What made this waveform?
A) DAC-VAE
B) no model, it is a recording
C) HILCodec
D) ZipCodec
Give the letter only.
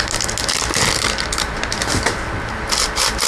B